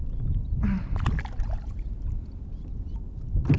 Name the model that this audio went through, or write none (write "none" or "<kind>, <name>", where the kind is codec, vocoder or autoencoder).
none